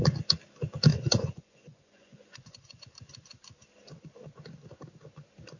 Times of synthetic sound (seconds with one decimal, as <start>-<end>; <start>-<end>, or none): 0.9-2.8

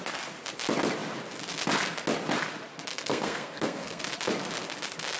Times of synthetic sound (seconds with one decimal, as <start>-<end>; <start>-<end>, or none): 2.9-4.0

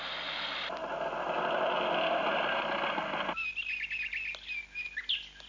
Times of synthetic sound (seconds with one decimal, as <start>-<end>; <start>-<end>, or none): none

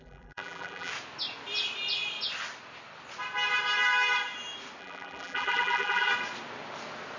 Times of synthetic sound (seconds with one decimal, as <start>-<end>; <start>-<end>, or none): 0.0-0.9; 4.8-6.1

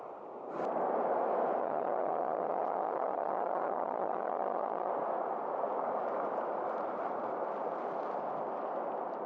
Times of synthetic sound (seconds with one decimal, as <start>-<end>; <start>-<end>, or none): 1.6-4.9

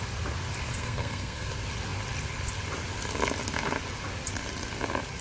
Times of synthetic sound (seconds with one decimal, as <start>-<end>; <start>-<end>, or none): 0.7-1.5

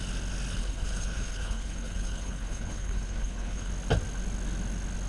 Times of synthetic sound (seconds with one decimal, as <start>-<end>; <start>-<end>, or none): 0.6-3.7